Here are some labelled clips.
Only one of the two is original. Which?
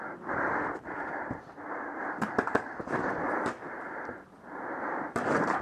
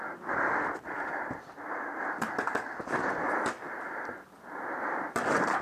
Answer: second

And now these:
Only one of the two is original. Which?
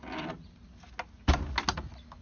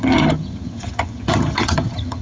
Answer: first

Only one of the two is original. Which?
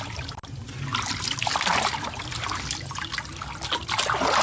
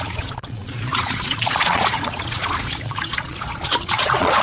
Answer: first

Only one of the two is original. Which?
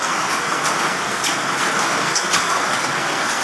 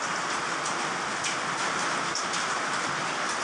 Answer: second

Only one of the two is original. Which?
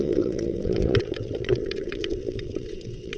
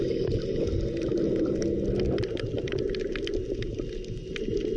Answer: second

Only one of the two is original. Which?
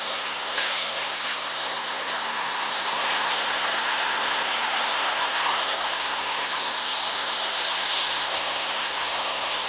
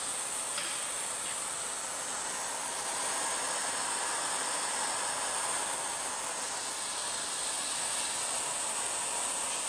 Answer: second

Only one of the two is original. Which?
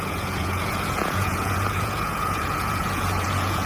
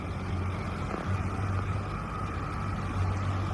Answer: second